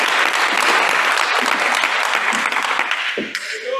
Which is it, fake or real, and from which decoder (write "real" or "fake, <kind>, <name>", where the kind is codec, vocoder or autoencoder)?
real